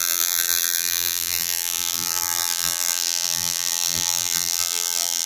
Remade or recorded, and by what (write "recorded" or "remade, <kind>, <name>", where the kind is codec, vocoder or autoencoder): remade, vocoder, BigVGAN v2